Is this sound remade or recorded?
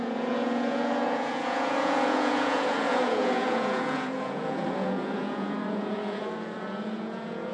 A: remade